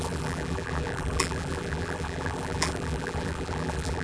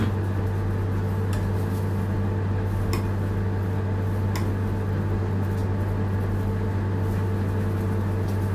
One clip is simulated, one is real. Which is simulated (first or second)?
first